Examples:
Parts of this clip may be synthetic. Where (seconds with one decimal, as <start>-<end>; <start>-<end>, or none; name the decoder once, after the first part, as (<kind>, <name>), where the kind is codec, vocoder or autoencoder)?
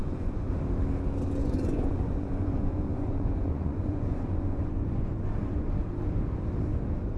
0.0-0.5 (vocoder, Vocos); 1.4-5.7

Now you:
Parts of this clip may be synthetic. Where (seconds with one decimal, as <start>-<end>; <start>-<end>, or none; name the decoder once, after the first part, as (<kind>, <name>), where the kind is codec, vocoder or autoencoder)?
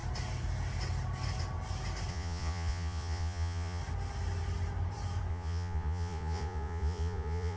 2.1-3.8 (vocoder, Vocos); 5.3-7.6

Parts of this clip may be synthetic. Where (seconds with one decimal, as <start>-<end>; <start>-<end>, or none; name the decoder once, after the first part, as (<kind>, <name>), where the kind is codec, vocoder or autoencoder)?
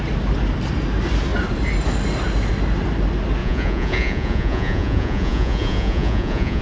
3.4-6.6 (vocoder, Vocos)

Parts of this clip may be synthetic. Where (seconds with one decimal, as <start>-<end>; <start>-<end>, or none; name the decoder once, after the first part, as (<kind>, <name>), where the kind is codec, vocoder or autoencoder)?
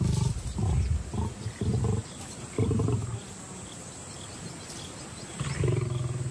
none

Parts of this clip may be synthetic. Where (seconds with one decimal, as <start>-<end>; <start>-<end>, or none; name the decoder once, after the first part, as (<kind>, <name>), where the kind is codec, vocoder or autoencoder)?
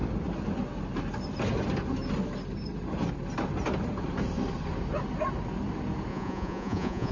6.1-7.1 (vocoder, Vocos)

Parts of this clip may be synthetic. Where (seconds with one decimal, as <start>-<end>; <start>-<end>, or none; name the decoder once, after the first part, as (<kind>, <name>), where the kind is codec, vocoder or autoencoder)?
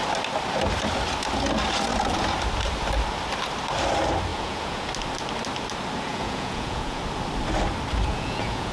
4.3-4.9 (vocoder, Vocos); 6.1-7.0; 8.1-8.7